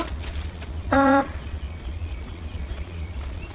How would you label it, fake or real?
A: fake